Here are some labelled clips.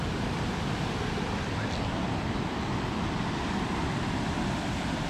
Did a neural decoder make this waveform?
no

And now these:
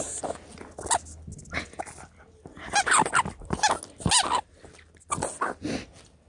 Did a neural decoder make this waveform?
no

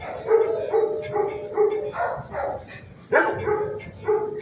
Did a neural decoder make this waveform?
no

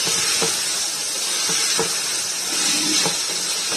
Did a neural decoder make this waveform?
no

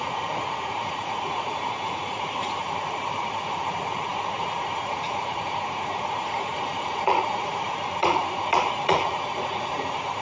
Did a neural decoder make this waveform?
yes